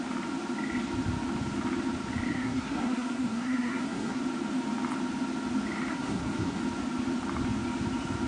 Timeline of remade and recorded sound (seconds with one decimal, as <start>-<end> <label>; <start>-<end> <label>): 0.0-2.3 recorded; 2.3-4.2 remade; 4.2-5.9 recorded; 5.9-6.6 remade; 6.6-8.3 recorded